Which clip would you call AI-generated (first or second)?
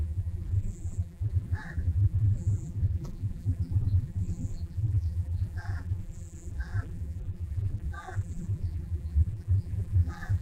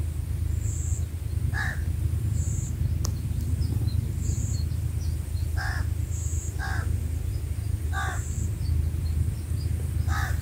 first